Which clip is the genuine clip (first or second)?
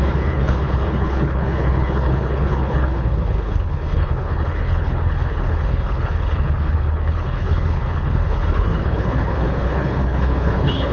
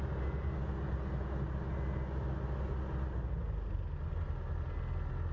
second